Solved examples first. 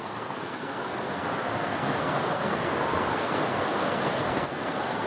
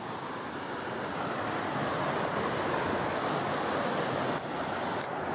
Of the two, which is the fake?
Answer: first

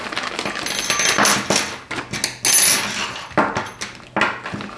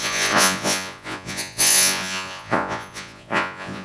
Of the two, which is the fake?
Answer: second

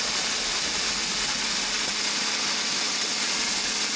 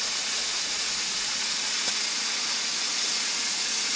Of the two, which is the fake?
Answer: second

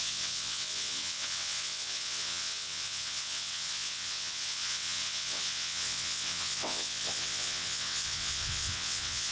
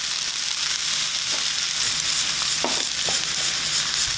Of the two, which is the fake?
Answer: first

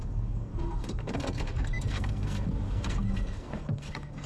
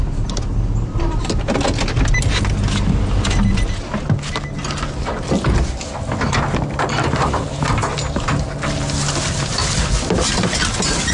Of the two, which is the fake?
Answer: first